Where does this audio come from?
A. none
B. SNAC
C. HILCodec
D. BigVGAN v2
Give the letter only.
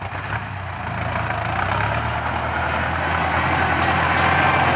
A